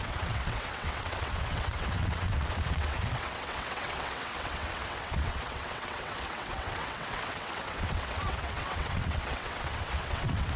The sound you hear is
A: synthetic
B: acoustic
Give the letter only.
A